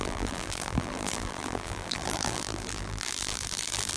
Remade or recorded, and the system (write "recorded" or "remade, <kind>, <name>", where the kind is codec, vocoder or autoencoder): remade, vocoder, BigVGAN v2